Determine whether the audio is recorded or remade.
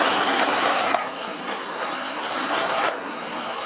remade